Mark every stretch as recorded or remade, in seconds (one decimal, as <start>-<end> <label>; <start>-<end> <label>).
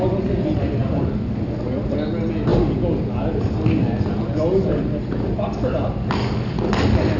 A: 0.0-7.2 recorded